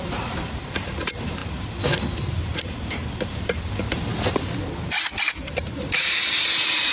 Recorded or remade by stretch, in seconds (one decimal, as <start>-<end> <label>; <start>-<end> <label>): 0.0-4.1 remade; 4.1-5.2 recorded; 5.2-6.9 remade

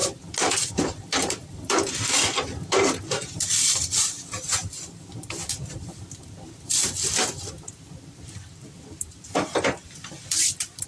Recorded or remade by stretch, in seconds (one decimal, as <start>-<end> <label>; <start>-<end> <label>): 0.0-0.7 recorded; 0.7-10.9 remade